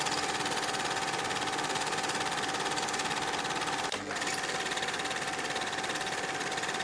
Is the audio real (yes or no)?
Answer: yes